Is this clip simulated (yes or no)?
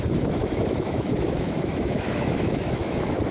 yes